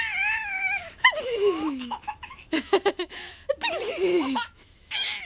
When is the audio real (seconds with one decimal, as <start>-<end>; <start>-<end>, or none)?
0.0-0.4; 3.5-4.1